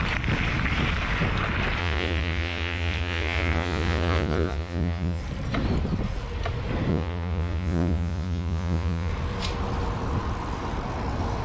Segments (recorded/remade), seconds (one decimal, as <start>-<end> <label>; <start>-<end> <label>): 0.0-1.8 recorded; 1.8-5.2 remade; 5.2-6.9 recorded; 6.9-9.1 remade; 9.1-11.4 recorded